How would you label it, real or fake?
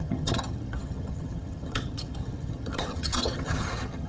fake